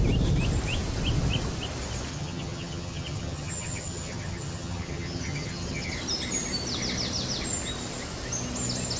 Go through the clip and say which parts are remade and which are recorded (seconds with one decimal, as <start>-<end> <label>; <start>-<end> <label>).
0.0-2.1 recorded; 2.1-5.9 remade; 5.9-9.0 recorded